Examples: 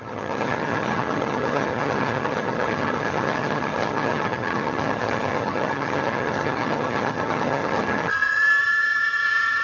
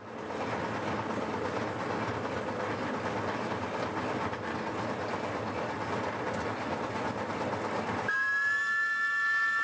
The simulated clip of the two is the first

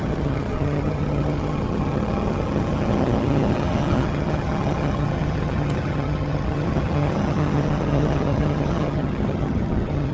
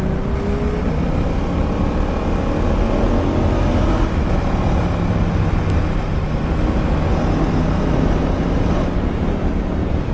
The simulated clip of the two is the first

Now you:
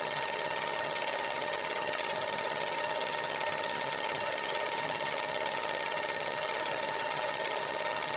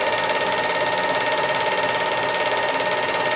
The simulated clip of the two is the first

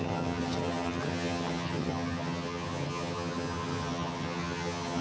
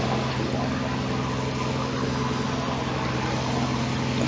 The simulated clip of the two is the first